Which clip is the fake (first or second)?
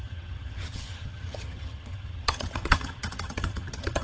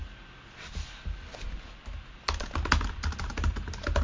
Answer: first